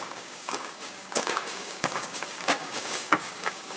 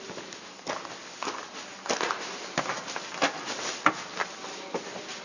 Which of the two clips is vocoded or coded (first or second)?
first